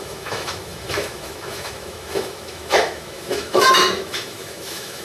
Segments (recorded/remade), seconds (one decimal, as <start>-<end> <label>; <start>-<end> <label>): 0.0-5.0 remade

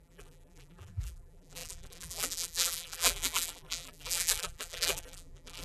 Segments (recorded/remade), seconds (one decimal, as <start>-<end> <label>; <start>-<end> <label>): 0.0-5.6 remade